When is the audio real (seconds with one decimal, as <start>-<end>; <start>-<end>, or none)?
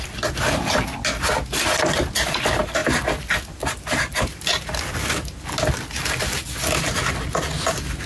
0.0-8.1